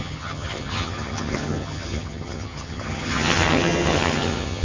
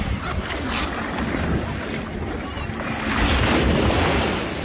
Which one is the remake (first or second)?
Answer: first